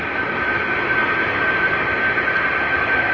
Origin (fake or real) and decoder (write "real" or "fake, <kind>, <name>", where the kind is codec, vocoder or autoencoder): fake, vocoder, BigVGAN v2